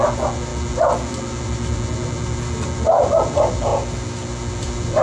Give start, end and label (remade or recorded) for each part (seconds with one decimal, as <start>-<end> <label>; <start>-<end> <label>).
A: 0.0-5.0 recorded